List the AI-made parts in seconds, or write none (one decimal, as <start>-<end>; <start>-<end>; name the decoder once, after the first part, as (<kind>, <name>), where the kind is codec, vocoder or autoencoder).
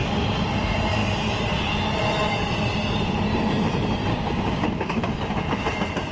4.1-5.0 (codec, DAC)